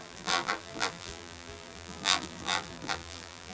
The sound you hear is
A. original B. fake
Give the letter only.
B